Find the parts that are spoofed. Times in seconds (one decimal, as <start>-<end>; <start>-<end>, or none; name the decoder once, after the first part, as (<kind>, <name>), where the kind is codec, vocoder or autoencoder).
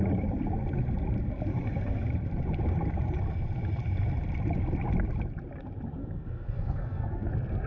6.0-7.3 (codec, SNAC)